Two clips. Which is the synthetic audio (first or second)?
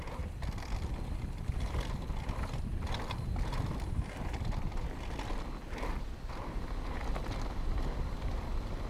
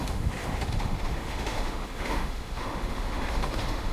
second